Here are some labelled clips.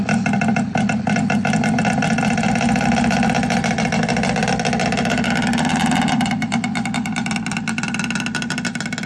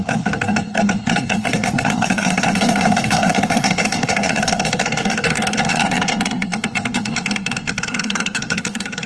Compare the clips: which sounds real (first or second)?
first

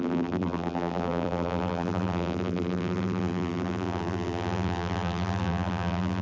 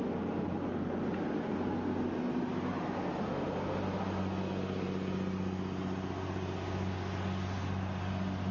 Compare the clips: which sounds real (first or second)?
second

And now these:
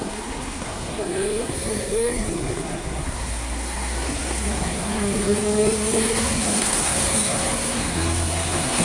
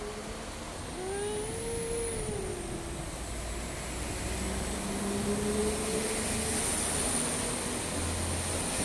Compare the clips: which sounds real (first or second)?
second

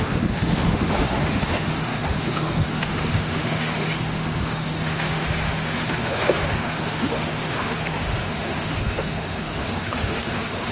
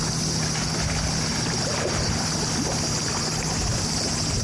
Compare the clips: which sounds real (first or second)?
second